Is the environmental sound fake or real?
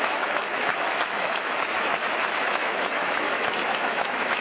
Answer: fake